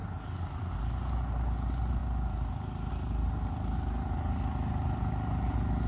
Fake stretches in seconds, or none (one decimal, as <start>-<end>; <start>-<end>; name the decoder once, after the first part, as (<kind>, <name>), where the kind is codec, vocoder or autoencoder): none